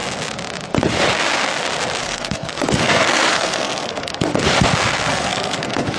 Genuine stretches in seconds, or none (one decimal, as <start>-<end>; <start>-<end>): 0.0-2.0; 4.3-5.1